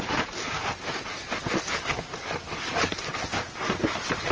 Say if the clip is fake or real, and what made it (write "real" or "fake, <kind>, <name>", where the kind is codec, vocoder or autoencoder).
real